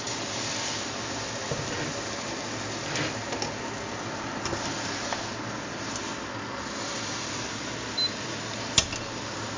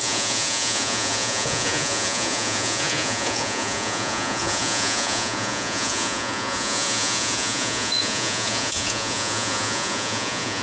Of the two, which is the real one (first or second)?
first